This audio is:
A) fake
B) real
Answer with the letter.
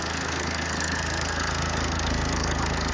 A